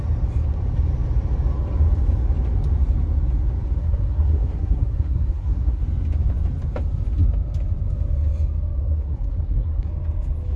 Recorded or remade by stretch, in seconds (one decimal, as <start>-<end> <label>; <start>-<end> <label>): 0.0-3.8 recorded; 3.8-5.8 remade; 5.8-8.8 recorded; 8.8-9.9 remade; 9.9-10.6 recorded